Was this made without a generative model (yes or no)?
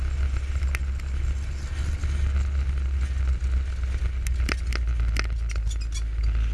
yes